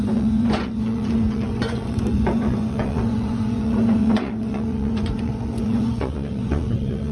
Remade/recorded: remade